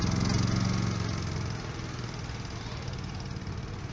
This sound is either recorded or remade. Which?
recorded